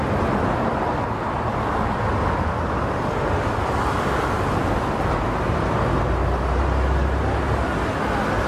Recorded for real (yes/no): yes